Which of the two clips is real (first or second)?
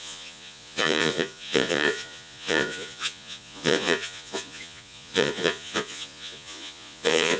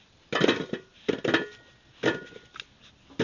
second